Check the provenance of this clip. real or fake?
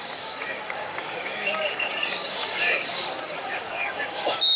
fake